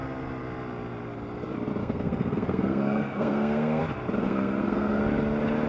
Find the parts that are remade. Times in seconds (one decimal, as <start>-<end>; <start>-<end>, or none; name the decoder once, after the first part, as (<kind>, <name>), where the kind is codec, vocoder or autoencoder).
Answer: 1.8-3.8 (codec, SNAC); 4.2-5.0